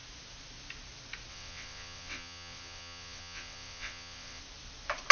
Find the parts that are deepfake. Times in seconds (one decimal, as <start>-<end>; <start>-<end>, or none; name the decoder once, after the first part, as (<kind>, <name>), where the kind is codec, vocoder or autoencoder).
1.3-4.4 (vocoder, WaveNeXt)